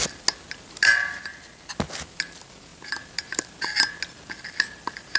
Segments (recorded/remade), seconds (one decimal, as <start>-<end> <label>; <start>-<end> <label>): 0.0-5.2 recorded